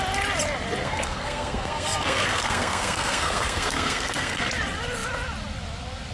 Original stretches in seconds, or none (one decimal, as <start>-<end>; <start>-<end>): 0.0-0.8; 4.5-6.1